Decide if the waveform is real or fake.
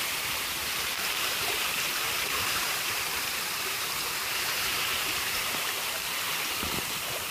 fake